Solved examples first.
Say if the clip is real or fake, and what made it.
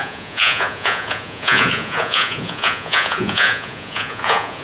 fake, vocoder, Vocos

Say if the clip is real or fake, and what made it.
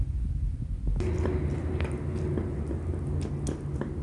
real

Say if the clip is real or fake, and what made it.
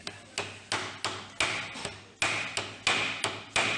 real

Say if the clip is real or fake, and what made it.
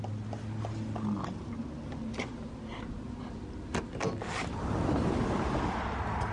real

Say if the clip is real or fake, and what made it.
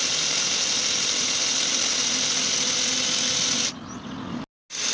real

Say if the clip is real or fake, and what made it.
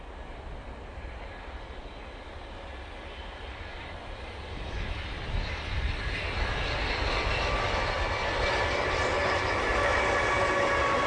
real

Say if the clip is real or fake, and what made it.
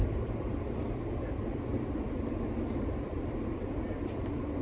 fake, vocoder, BigVGAN v2